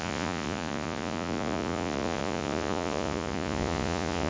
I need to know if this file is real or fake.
fake